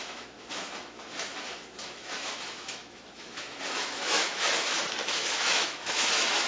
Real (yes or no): no